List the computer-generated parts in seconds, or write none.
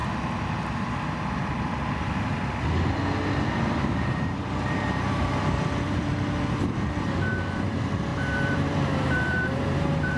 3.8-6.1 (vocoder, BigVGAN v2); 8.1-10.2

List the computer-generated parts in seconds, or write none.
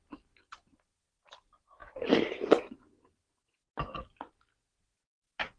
none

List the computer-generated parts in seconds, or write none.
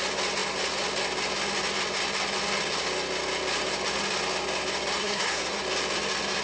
5.0-5.6 (codec, SNAC)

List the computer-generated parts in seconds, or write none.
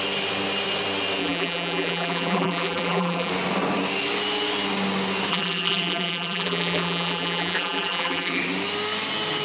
1.2-3.3 (vocoder, BigVGAN v2); 5.3-8.4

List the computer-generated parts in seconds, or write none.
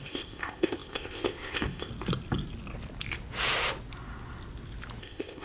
0.0-1.9 (codec, ZipCodec); 5.0-5.4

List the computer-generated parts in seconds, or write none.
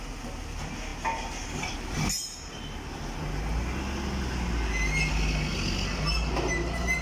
none